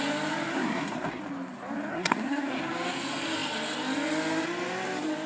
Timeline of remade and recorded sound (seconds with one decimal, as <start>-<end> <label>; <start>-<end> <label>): 0.0-0.5 recorded; 0.5-1.2 remade; 1.2-1.9 recorded; 1.9-2.6 remade; 2.6-5.3 recorded